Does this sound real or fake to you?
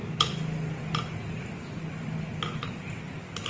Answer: real